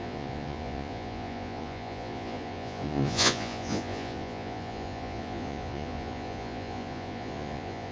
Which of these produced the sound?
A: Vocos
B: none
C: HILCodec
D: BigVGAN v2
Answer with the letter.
A